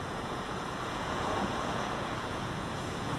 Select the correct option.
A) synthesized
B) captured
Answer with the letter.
A